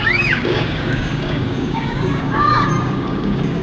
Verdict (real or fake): fake